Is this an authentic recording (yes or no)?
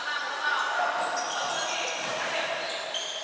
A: yes